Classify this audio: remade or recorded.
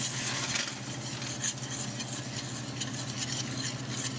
recorded